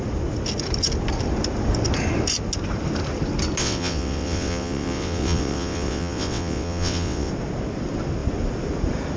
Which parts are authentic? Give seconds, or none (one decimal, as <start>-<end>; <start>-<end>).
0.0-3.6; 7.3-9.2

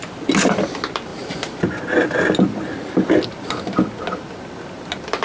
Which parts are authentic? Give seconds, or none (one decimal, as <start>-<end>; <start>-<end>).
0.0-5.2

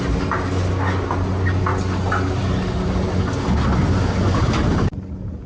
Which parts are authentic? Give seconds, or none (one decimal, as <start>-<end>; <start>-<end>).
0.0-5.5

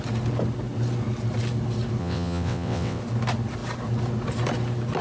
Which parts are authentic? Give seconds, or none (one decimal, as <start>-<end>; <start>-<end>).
0.0-2.0; 3.0-5.0

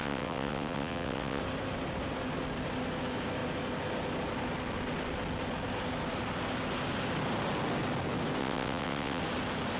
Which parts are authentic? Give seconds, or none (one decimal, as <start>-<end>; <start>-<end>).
1.4-8.4; 9.2-9.8

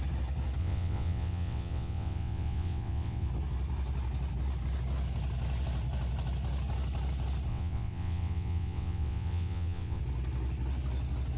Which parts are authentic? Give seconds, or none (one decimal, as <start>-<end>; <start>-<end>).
0.0-0.6; 3.3-7.5; 10.0-11.4

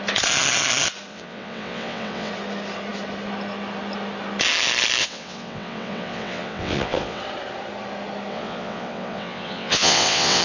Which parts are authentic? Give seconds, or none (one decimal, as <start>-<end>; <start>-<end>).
0.0-1.1; 2.3-5.0; 7.2-8.3